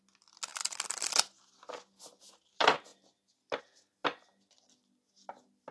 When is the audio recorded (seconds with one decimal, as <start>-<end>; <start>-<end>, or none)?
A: 0.0-5.7